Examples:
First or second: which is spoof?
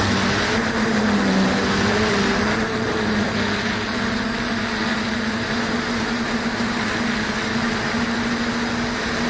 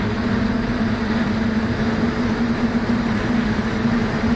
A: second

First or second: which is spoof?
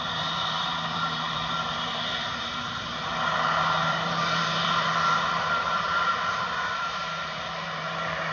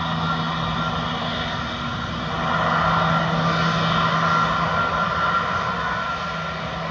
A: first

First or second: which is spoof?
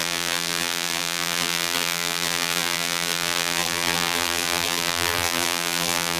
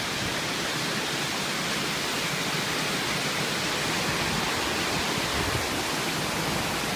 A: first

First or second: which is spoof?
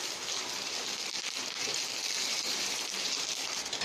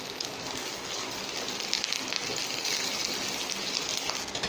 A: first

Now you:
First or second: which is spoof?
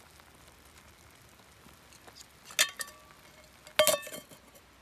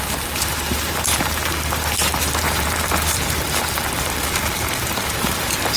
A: second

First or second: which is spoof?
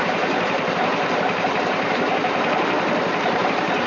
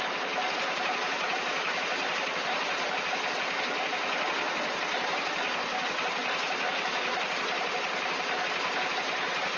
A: first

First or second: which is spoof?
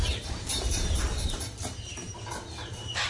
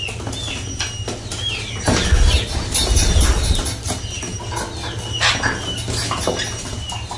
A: first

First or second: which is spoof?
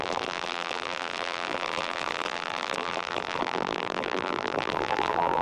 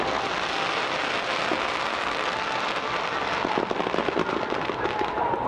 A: first